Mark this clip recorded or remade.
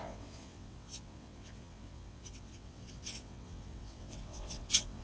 remade